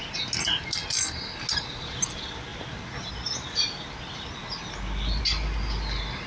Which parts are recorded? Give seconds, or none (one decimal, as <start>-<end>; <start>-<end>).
0.0-6.3